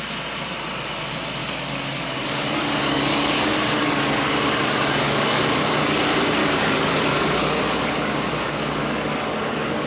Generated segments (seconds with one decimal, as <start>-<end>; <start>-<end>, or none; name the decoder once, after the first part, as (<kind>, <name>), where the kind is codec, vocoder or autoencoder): 1.4-6.0 (codec, DAC); 6.4-9.9